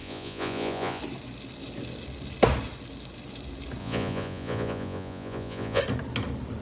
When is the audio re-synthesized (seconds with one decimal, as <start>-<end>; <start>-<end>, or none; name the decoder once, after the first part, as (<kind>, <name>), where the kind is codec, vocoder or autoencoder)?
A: 0.0-1.0 (vocoder, Vocos); 3.8-5.8

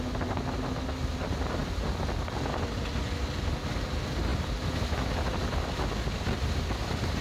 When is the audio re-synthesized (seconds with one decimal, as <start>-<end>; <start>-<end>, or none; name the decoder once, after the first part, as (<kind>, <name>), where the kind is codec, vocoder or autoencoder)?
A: none